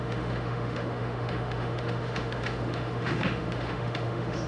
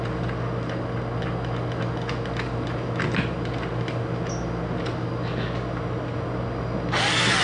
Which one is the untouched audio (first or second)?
second